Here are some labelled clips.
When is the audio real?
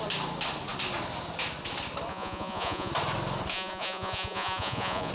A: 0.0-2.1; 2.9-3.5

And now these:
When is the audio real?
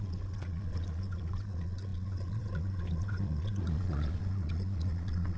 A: none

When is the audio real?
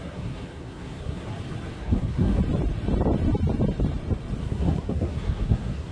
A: 1.3-1.8; 2.4-4.4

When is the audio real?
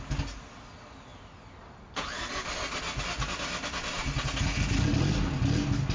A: 0.0-5.9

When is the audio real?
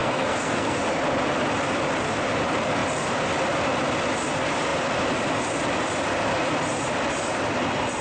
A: 0.8-8.0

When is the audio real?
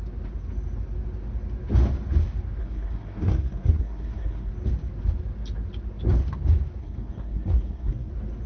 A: 0.0-2.6; 4.5-6.8; 8.1-8.5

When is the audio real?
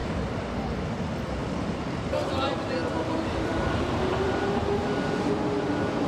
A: 0.5-1.4; 2.1-2.8; 3.7-6.1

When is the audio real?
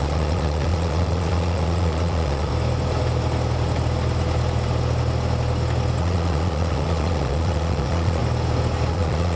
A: 2.5-6.0; 8.2-8.9